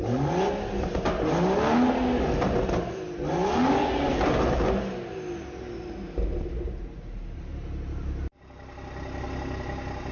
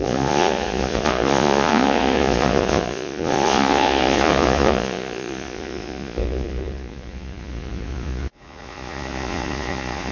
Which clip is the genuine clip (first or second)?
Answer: first